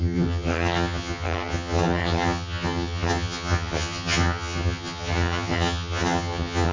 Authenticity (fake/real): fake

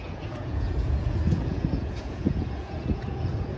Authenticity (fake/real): fake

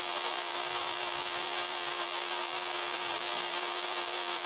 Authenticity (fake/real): fake